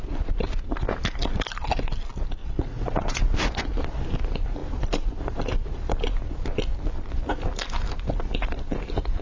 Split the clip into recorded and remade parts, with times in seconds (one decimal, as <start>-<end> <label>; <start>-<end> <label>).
0.0-2.4 recorded; 2.4-3.2 remade; 3.2-9.2 recorded